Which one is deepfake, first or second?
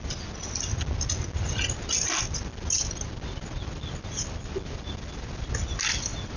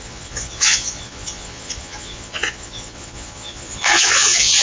second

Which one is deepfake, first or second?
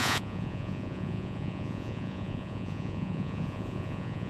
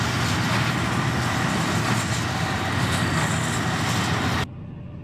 first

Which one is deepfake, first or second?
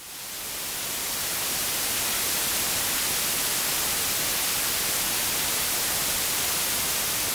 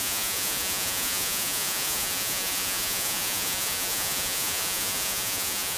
second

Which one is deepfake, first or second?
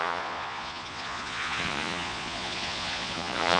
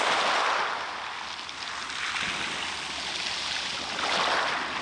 first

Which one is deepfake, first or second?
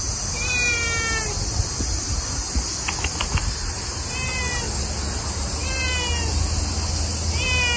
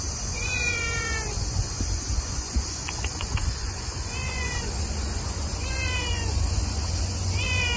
second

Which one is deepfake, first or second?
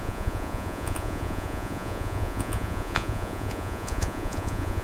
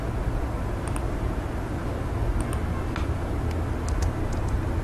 first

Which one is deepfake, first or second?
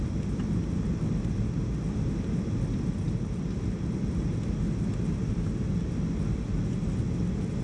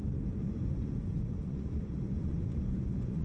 second